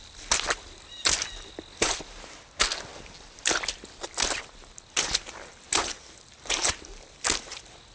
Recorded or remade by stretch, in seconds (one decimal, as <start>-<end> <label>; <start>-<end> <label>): 0.0-7.9 recorded